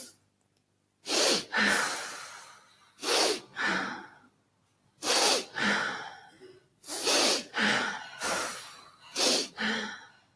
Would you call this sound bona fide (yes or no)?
yes